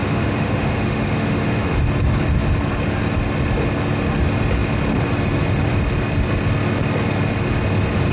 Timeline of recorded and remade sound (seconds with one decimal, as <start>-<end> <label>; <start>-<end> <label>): 0.0-1.8 remade; 1.8-8.1 recorded